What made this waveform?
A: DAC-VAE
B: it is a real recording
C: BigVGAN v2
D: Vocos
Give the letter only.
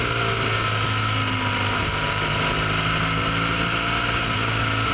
B